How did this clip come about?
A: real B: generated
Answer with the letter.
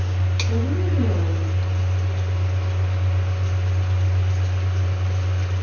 A